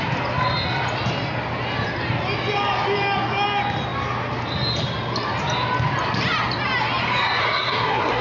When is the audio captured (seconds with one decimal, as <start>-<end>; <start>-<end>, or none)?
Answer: 0.0-7.4

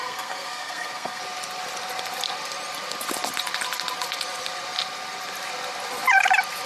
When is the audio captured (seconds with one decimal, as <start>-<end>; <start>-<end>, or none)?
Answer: 1.2-6.7

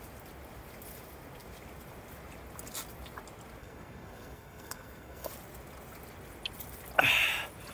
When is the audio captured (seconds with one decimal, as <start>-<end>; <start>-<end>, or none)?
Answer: 0.0-3.6; 5.3-7.7